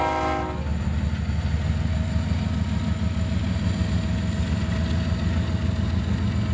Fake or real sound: real